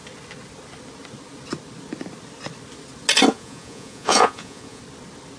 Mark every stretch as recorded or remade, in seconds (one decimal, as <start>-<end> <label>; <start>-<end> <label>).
0.0-3.3 recorded; 3.3-4.8 remade; 4.8-5.4 recorded

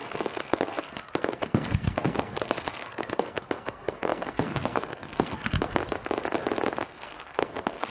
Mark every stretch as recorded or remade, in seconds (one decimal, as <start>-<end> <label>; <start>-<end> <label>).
0.0-5.8 remade; 5.8-6.8 recorded; 6.8-7.9 remade